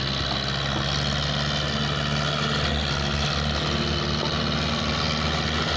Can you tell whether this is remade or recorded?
recorded